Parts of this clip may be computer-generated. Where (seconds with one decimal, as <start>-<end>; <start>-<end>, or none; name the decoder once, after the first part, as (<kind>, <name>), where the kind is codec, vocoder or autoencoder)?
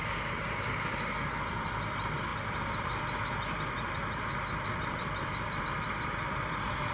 0.0-1.3 (codec, DAC)